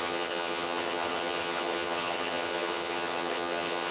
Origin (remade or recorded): remade